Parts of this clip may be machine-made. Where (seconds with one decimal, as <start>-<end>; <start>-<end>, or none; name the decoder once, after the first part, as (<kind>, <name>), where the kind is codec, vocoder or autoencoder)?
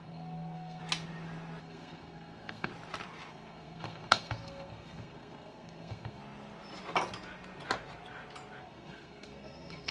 0.0-0.8 (codec, SNAC); 1.6-2.7; 3.3-6.2; 8.6-9.9